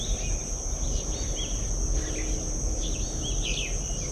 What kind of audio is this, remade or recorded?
recorded